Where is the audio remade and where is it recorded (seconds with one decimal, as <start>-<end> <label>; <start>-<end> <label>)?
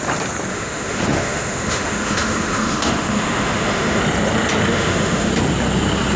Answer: 0.0-0.5 recorded; 0.5-4.0 remade; 4.0-4.7 recorded; 4.7-5.3 remade; 5.3-6.2 recorded